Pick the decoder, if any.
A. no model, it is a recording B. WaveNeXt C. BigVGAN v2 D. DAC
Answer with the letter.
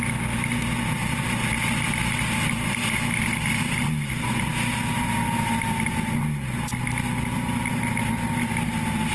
A